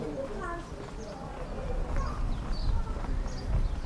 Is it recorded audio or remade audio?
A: recorded